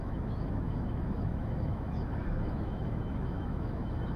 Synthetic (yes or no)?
yes